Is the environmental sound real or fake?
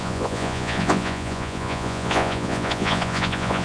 fake